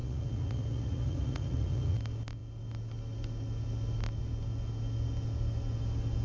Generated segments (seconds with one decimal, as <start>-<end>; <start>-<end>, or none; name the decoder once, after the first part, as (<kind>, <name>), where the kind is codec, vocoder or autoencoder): 0.0-2.0 (vocoder, Vocos)